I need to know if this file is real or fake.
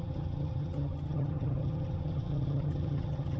fake